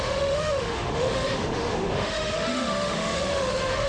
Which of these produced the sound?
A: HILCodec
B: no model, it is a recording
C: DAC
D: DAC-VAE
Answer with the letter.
D